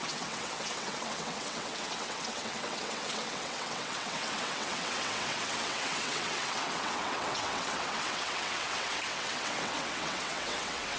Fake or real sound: fake